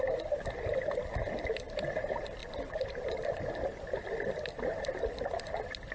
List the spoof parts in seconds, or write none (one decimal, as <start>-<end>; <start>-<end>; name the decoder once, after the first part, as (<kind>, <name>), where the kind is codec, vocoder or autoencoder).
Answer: 2.4-5.5 (vocoder, BigVGAN v2)